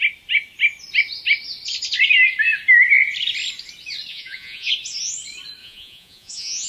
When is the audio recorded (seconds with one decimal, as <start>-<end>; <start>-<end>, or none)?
0.0-4.1; 4.7-5.6